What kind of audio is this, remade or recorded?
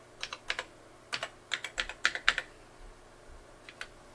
recorded